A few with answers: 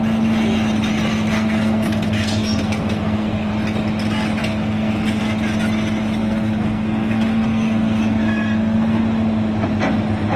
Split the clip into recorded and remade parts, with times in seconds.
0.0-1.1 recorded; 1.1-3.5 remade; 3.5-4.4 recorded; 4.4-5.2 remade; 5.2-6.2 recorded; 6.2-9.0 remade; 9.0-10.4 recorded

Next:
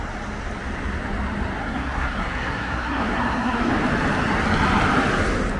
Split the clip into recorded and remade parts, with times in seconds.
0.0-1.6 recorded; 1.6-3.7 remade; 3.7-5.6 recorded

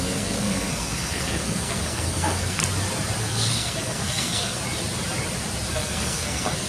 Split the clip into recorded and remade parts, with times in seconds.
0.0-2.6 remade; 2.6-3.2 recorded; 3.2-4.6 remade; 4.6-5.7 recorded; 5.7-6.7 remade

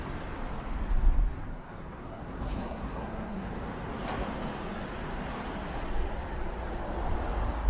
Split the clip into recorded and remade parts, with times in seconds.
0.0-1.5 recorded; 1.5-3.5 remade; 3.5-7.7 recorded

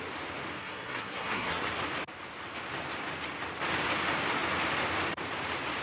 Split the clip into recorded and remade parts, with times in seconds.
0.0-0.6 recorded; 0.6-1.7 remade; 1.7-5.8 recorded

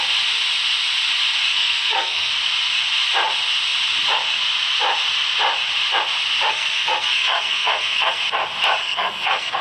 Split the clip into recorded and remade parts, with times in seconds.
0.0-1.5 recorded; 1.5-2.3 remade; 2.3-6.5 recorded; 6.5-8.2 remade; 8.2-8.8 recorded; 8.8-9.6 remade